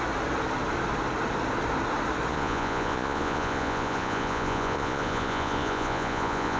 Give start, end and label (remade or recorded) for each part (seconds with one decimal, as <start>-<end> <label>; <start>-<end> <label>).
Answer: 0.0-2.3 recorded; 2.3-6.6 remade